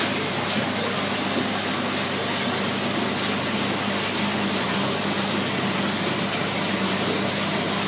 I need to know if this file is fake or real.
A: real